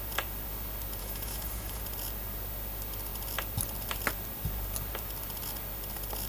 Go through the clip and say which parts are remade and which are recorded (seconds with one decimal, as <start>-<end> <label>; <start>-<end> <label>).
0.0-1.0 recorded; 1.0-1.8 remade; 1.8-6.3 recorded

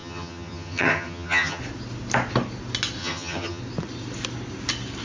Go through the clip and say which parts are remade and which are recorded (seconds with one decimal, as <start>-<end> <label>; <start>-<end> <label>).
0.0-1.6 remade; 1.6-3.0 recorded; 3.0-3.6 remade; 3.6-5.0 recorded

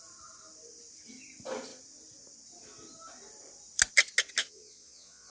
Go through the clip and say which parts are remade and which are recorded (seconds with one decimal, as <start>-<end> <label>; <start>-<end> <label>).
0.0-4.4 recorded; 4.4-5.3 remade

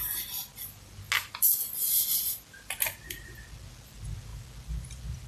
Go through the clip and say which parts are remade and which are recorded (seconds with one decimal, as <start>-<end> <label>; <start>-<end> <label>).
0.0-5.3 recorded

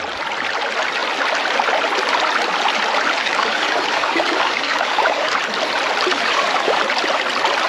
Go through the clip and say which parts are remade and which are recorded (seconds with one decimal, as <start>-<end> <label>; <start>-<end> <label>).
0.0-3.2 recorded; 3.2-5.4 remade; 5.4-6.1 recorded; 6.1-6.8 remade; 6.8-7.7 recorded

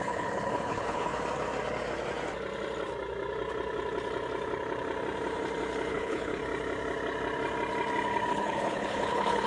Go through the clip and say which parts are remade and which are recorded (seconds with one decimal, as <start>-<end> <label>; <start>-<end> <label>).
0.0-1.1 remade; 1.1-5.9 recorded; 5.9-6.4 remade; 6.4-8.3 recorded; 8.3-9.5 remade